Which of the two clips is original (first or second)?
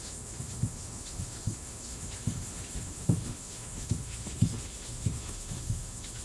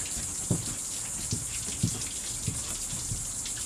second